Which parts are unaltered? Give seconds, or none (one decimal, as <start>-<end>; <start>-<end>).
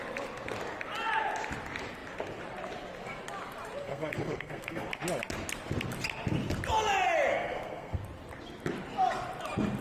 0.0-3.8; 4.9-7.3; 8.0-9.8